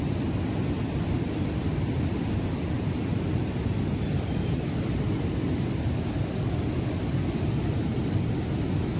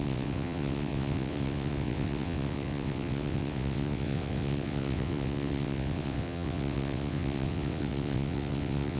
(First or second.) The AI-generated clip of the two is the second